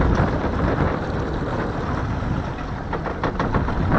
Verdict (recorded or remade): recorded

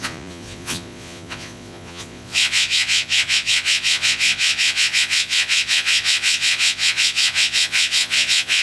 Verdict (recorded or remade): remade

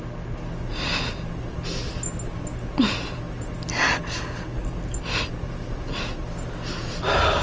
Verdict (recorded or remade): recorded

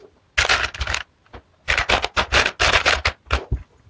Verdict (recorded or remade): recorded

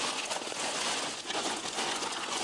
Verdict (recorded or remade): remade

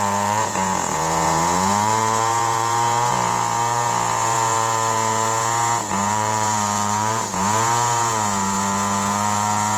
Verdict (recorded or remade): remade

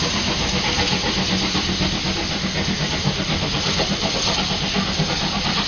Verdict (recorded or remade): recorded